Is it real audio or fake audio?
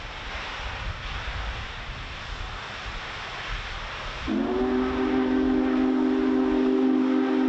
real